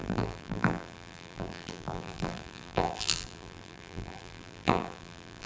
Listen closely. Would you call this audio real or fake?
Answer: fake